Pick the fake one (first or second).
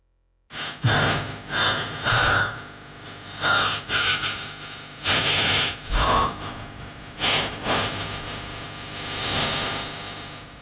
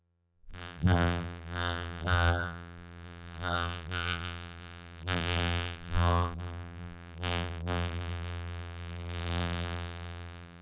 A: second